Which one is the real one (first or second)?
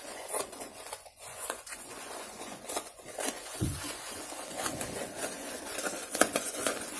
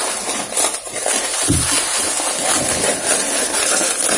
second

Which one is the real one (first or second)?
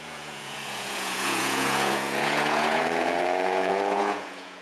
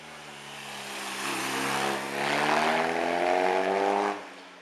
second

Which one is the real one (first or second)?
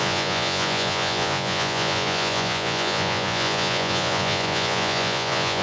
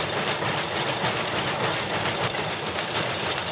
second